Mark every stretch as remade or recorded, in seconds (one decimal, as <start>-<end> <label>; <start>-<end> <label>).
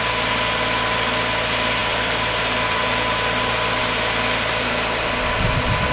0.0-1.8 recorded; 1.8-3.8 remade; 3.8-5.9 recorded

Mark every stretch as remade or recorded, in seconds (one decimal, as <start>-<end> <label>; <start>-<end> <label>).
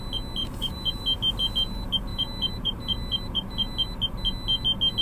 0.0-0.4 recorded; 0.4-1.0 remade; 1.0-2.1 recorded; 2.1-3.7 remade; 3.7-5.0 recorded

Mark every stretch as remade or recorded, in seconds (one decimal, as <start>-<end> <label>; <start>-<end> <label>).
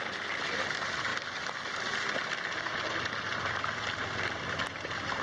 0.0-1.1 remade; 1.1-4.2 recorded; 4.2-5.2 remade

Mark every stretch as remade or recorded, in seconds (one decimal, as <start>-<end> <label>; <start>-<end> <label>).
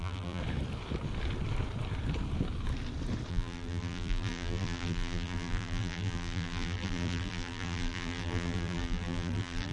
0.0-0.4 remade; 0.4-3.3 recorded; 3.3-9.7 remade